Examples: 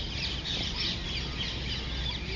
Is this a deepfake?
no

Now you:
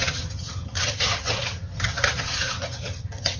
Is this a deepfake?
yes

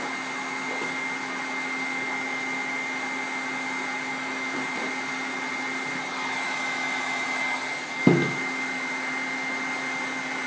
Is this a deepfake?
no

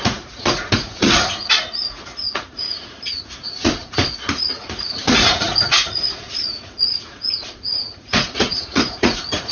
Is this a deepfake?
yes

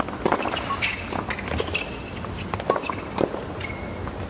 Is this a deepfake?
no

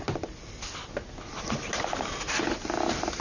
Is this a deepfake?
no